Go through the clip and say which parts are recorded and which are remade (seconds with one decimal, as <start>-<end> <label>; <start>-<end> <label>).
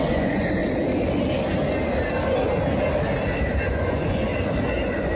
0.0-0.6 remade; 0.6-3.7 recorded; 3.7-4.3 remade; 4.3-4.8 recorded; 4.8-5.2 remade